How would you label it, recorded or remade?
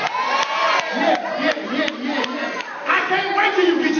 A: recorded